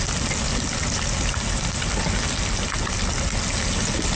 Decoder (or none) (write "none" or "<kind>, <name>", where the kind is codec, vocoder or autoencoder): none